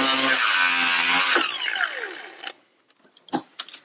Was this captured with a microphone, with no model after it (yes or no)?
yes